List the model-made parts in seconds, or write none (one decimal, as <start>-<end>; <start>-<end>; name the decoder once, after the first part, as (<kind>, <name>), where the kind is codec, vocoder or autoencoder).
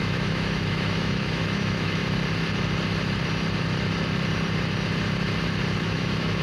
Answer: 0.0-2.0 (autoencoder, DAC-VAE); 5.8-6.4